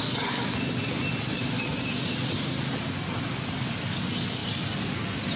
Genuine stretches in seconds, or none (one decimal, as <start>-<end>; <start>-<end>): 0.0-5.4